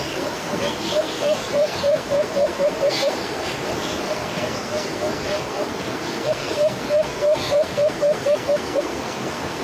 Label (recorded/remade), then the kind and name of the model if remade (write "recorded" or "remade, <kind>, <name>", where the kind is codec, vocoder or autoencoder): remade, codec, SNAC